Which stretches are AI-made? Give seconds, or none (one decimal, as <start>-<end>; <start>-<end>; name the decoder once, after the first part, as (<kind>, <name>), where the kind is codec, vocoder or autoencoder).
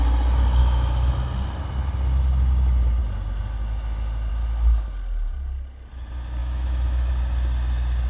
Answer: 0.6-1.1 (autoencoder, DAC-VAE); 6.4-7.1